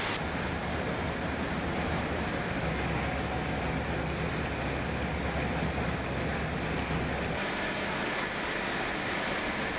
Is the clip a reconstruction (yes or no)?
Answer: no